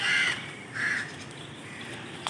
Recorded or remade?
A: recorded